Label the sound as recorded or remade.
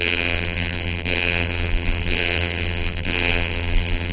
remade